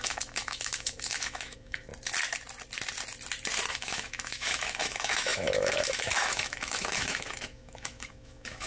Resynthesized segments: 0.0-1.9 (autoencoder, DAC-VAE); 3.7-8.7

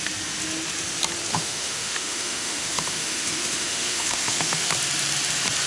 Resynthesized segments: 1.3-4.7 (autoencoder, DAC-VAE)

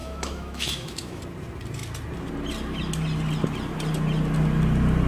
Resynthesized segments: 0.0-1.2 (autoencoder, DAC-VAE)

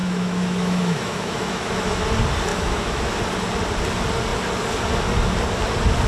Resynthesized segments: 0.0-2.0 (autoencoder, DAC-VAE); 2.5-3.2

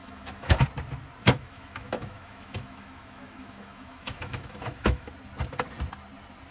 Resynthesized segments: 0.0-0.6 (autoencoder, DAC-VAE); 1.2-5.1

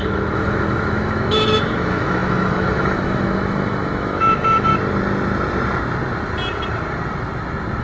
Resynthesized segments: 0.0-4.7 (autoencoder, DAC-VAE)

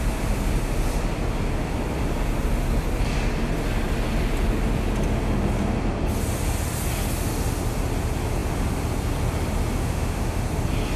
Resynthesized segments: 9.8-10.4 (autoencoder, DAC-VAE)

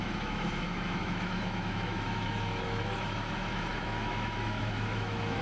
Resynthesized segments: 0.0-5.4 (autoencoder, DAC-VAE)